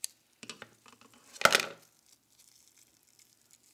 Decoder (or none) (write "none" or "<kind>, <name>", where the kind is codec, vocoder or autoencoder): none